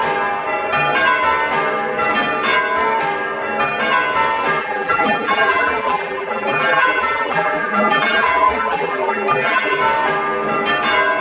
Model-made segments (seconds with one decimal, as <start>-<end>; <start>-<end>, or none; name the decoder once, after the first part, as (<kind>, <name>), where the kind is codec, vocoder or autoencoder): 4.6-9.8 (vocoder, BigVGAN v2)